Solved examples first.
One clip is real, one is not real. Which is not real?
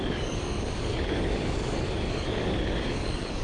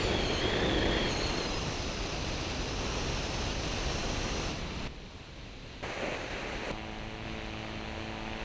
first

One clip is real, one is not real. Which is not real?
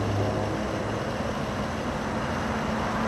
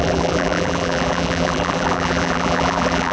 second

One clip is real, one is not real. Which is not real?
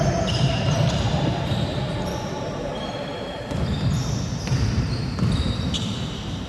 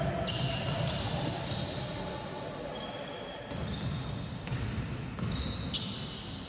first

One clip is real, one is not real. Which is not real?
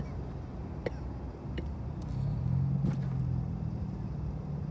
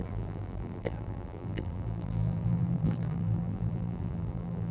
second